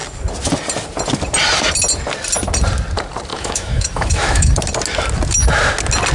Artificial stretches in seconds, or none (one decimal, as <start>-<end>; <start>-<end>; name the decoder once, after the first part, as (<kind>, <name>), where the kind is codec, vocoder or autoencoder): 3.3-4.5 (autoencoder, DAC-VAE)